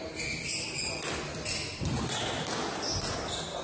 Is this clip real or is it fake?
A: real